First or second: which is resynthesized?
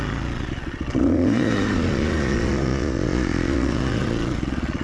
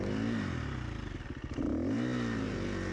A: first